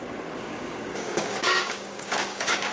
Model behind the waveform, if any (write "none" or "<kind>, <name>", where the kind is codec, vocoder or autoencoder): codec, DAC